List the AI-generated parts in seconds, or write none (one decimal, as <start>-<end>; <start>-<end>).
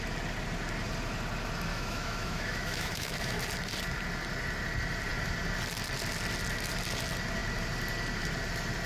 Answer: 1.7-3.4